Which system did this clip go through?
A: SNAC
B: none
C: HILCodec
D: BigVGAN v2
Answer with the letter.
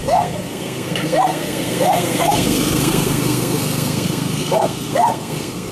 A